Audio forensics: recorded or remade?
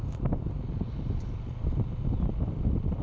recorded